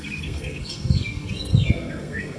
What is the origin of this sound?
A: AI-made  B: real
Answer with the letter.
A